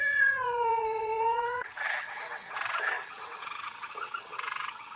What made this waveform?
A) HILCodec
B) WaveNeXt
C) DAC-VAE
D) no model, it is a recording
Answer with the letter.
B